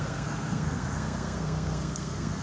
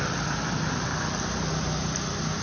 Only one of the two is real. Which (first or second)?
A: second